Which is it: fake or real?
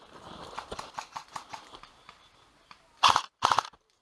real